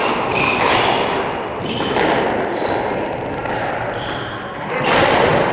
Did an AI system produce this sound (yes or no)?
no